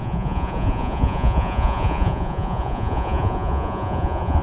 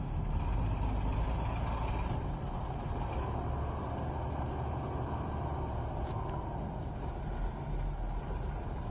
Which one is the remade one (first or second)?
first